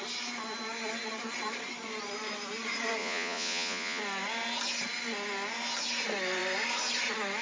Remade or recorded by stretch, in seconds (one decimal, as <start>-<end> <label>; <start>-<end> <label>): 0.0-3.0 recorded; 3.0-4.0 remade; 4.0-7.4 recorded

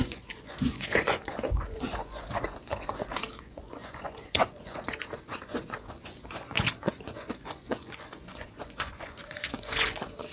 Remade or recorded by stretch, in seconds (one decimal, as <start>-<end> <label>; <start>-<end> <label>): 0.0-10.3 remade

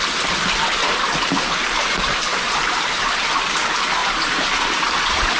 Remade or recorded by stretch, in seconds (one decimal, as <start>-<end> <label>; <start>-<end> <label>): 0.0-0.8 recorded; 0.8-3.2 remade; 3.2-4.0 recorded; 4.0-4.6 remade; 4.6-5.4 recorded

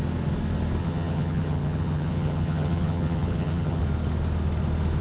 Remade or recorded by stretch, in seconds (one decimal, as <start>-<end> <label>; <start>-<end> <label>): 0.0-0.8 recorded; 0.8-3.8 remade; 3.8-5.0 recorded

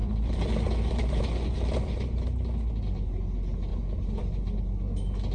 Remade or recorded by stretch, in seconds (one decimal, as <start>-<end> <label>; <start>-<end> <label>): 0.0-1.2 remade; 1.2-3.7 recorded; 3.7-4.6 remade; 4.6-5.3 recorded

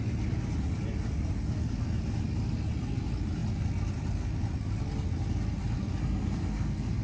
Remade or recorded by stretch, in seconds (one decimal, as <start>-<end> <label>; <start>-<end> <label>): 0.0-6.0 recorded; 6.0-7.0 remade

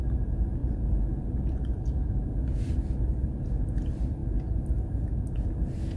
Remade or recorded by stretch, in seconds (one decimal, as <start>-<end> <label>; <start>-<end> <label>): 0.0-6.0 recorded